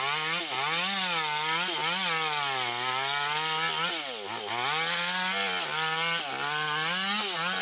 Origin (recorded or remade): recorded